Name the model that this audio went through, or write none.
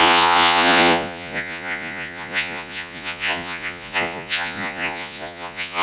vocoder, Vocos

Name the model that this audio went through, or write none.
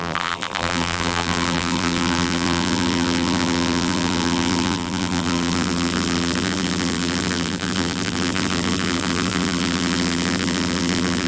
vocoder, BigVGAN v2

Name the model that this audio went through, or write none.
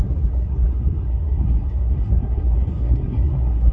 codec, SNAC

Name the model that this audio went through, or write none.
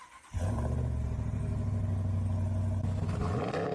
none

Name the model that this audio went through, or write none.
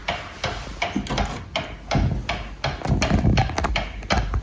none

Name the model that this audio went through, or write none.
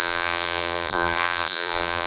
vocoder, BigVGAN v2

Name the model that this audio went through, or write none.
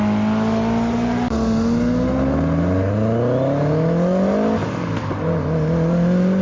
none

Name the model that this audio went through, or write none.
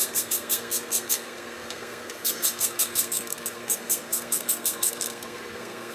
codec, SNAC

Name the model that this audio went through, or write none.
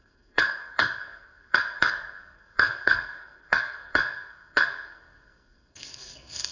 codec, SNAC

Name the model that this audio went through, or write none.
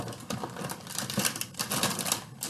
none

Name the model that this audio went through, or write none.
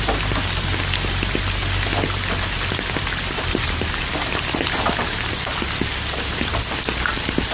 none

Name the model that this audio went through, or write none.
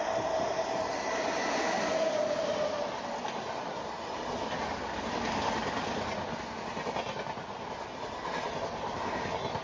none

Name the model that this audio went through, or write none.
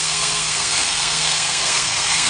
codec, SNAC